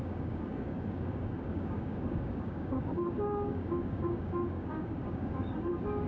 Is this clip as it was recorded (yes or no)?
no